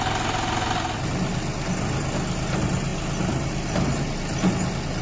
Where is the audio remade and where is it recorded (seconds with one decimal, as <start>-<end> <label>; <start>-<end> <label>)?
0.0-5.0 recorded